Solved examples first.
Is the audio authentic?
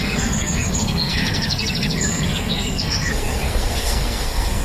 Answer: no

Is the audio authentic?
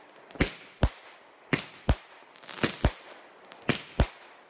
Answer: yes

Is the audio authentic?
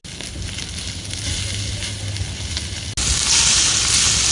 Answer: yes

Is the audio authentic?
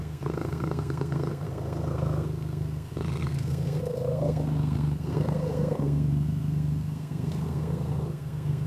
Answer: no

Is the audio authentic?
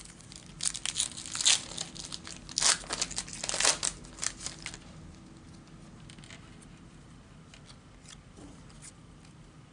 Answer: yes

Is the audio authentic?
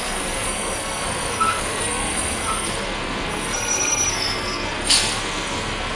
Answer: no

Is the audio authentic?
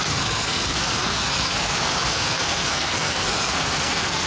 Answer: no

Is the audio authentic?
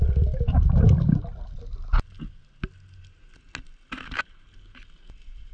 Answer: yes